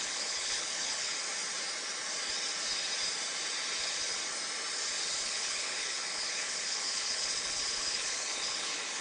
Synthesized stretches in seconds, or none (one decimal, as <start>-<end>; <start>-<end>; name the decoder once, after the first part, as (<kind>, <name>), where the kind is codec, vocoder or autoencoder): 0.0-1.1 (codec, HILCodec); 3.8-4.2; 5.0-9.0